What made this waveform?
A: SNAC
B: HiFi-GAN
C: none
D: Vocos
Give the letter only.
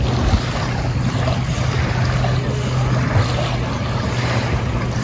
C